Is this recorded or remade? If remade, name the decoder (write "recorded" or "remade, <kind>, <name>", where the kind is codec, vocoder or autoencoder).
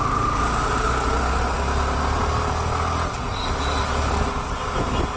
recorded